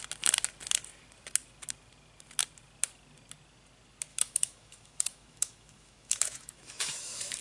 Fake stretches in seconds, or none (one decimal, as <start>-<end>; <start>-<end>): 4.1-7.4